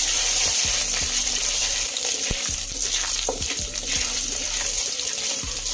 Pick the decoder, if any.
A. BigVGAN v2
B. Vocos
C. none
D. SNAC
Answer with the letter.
A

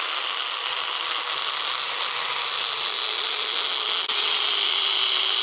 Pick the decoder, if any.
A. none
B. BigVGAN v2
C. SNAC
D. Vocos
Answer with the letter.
A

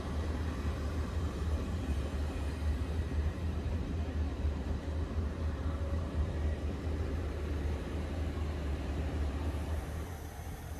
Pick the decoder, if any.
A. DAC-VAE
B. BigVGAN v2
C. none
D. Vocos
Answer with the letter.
B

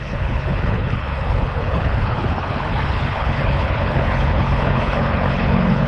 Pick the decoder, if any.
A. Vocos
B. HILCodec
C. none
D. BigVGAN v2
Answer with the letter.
B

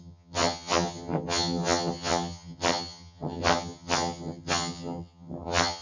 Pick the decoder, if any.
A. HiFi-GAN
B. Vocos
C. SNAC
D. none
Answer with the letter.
A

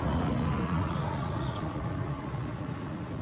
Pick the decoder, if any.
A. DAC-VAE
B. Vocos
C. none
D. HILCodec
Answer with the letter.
B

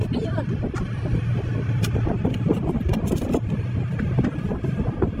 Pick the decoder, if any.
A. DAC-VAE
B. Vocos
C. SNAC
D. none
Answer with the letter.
D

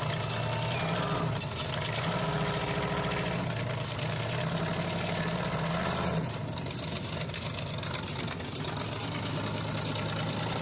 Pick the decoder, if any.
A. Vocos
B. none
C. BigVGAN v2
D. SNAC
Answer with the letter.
B